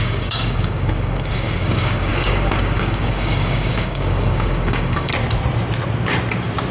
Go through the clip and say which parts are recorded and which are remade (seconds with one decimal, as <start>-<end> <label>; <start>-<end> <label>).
0.0-5.1 remade; 5.1-6.7 recorded

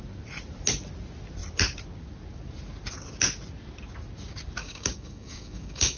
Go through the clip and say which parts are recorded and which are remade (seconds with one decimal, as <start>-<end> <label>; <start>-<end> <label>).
0.0-4.6 recorded; 4.6-6.0 remade

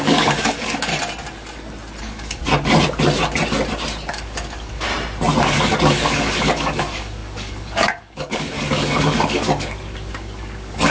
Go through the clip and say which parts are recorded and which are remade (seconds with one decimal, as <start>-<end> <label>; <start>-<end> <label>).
0.0-0.9 remade; 0.9-2.0 recorded; 2.0-2.4 remade; 2.4-4.1 recorded; 4.1-4.9 remade; 4.9-5.4 recorded; 5.4-10.9 remade

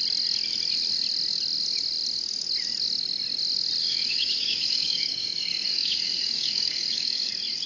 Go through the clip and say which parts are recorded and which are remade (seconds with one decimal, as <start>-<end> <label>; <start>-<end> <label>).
0.0-3.8 recorded; 3.8-7.3 remade; 7.3-7.7 recorded

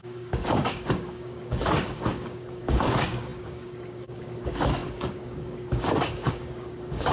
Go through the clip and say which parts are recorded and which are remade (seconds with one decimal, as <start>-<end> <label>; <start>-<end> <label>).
0.0-7.1 remade

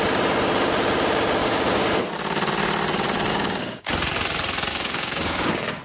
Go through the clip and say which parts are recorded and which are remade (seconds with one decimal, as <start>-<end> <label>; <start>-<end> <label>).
0.0-1.4 recorded; 1.4-1.9 remade; 1.9-3.3 recorded; 3.3-3.9 remade; 3.9-4.7 recorded; 4.7-5.8 remade

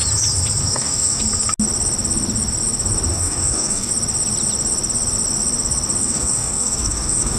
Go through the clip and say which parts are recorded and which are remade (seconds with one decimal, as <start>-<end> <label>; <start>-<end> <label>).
0.0-0.6 recorded; 0.6-1.2 remade; 1.2-3.1 recorded; 3.1-3.9 remade; 3.9-6.0 recorded; 6.0-7.4 remade